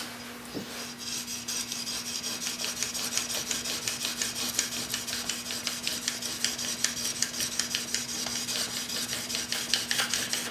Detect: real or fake real